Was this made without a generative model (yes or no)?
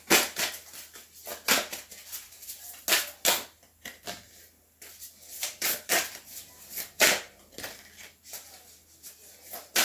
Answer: yes